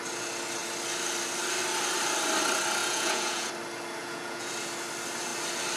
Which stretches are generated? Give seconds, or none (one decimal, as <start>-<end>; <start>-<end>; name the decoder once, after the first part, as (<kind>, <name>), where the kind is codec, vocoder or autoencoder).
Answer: 2.8-3.5 (vocoder, Vocos); 4.0-4.5